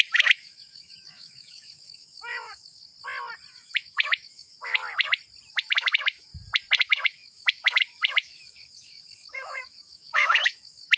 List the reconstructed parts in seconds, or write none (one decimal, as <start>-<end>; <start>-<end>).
0.0-2.9; 3.5-4.8; 5.5-6.3; 6.8-11.0